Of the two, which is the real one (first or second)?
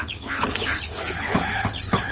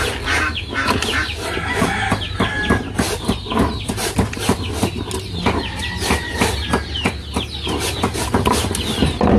second